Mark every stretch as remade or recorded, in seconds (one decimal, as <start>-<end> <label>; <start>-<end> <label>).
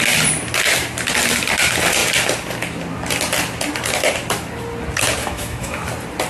0.0-5.2 recorded; 5.2-5.8 remade; 5.8-6.3 recorded